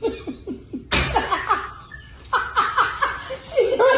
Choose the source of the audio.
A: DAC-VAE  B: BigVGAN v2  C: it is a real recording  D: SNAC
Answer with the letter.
C